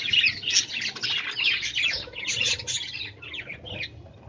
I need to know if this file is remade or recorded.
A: recorded